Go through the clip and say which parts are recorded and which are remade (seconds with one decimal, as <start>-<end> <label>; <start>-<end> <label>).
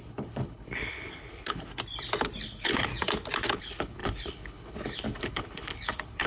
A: 0.0-1.7 remade; 1.7-2.4 recorded; 2.4-2.9 remade; 2.9-3.6 recorded; 3.6-6.3 remade